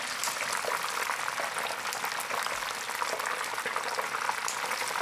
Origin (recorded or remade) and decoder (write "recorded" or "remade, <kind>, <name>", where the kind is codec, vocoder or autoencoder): recorded